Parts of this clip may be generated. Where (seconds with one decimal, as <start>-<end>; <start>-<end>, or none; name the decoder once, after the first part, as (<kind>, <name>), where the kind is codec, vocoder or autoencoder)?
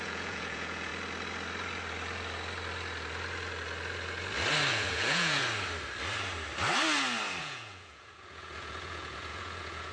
0.0-0.9 (vocoder, Vocos); 4.7-5.4; 7.4-9.9